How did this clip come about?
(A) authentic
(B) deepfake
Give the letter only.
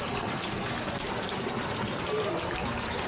B